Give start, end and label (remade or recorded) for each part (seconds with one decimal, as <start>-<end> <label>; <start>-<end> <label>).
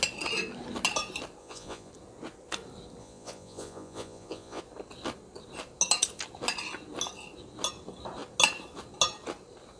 0.0-1.4 recorded; 1.4-1.9 remade; 1.9-3.0 recorded; 3.0-4.6 remade; 4.6-9.8 recorded